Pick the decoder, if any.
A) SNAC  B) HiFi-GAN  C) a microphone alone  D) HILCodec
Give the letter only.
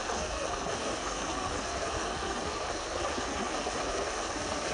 A